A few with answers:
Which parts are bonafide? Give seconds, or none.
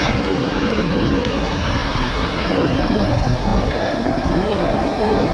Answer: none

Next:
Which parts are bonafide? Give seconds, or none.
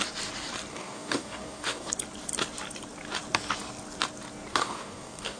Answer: 0.0-0.7; 1.9-4.5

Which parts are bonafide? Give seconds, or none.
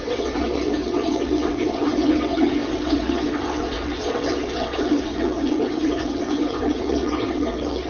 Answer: none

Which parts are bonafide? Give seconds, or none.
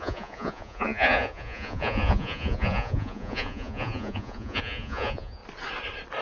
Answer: 5.4-6.2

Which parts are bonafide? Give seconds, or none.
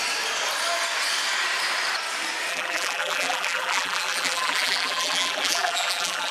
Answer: 0.0-2.5